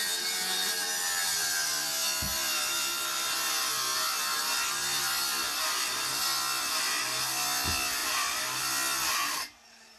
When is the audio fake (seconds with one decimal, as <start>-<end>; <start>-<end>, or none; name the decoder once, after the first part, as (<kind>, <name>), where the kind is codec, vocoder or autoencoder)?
none